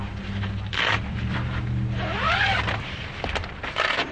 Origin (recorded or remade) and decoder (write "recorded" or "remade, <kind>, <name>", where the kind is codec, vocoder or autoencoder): remade, vocoder, BigVGAN v2